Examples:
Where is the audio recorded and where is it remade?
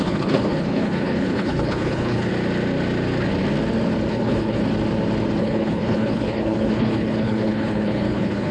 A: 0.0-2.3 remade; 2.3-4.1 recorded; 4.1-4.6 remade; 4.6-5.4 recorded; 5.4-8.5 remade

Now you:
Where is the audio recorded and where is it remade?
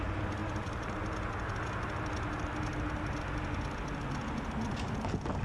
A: 0.0-5.4 recorded